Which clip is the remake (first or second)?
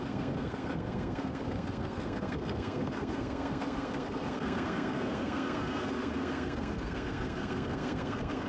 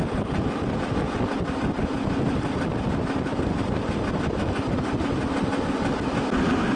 first